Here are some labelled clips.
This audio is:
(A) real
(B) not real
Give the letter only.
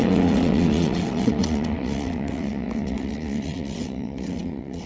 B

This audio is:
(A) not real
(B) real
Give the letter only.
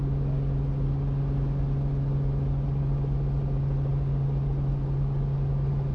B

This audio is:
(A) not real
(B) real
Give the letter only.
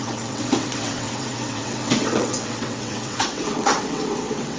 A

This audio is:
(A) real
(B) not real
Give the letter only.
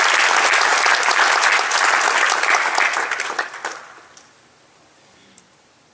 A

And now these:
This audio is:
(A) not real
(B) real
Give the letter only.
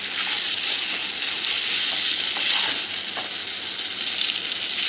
B